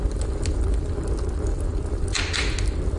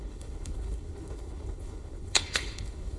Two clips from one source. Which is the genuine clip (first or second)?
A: first